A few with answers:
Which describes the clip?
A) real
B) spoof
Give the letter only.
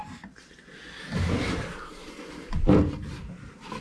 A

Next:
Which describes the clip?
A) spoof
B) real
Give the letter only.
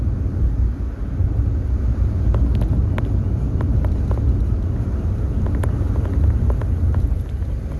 B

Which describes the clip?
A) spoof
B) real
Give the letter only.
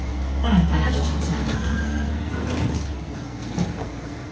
A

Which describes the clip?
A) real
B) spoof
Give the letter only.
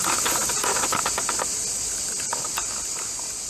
A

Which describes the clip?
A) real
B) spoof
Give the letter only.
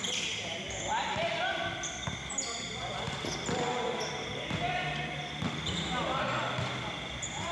A